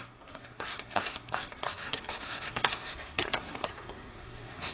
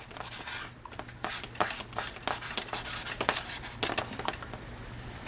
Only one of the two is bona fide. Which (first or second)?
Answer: second